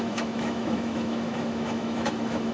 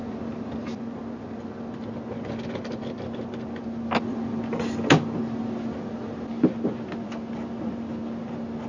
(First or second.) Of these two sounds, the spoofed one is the first